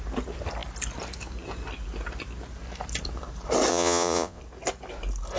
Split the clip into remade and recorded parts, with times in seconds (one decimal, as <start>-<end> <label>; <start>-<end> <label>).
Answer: 0.0-3.7 recorded; 3.7-4.4 remade; 4.4-5.4 recorded